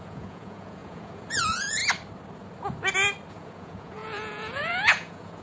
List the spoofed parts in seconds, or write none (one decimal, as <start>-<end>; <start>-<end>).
0.0-1.8; 3.3-5.4